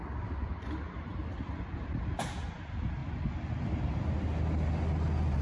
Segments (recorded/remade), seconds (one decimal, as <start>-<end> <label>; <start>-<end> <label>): 0.0-5.4 recorded